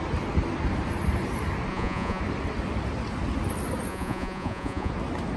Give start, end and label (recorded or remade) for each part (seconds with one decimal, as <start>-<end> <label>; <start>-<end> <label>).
0.0-1.7 recorded; 1.7-2.2 remade; 2.2-3.9 recorded; 3.9-4.9 remade; 4.9-5.4 recorded